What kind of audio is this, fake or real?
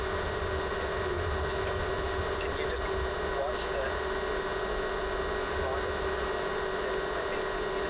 real